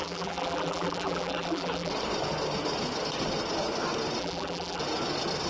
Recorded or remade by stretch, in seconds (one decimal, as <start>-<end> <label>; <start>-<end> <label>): 0.0-1.9 remade; 1.9-4.2 recorded; 4.2-4.8 remade; 4.8-5.5 recorded